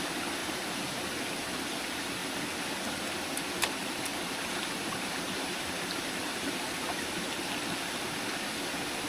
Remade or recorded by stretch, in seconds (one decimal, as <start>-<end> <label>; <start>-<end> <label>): 0.0-0.4 recorded; 0.4-1.4 remade; 1.4-4.1 recorded; 4.1-7.0 remade; 7.0-9.1 recorded